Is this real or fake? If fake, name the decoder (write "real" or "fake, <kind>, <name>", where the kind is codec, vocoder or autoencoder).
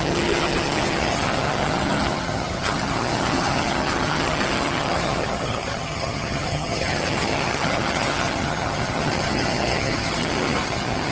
fake, vocoder, HiFi-GAN